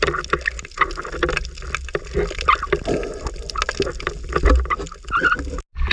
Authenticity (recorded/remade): recorded